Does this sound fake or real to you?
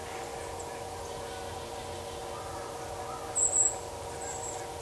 real